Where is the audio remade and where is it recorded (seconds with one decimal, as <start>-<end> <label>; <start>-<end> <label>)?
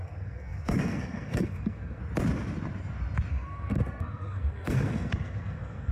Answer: 0.0-2.0 remade; 2.0-3.3 recorded; 3.3-5.9 remade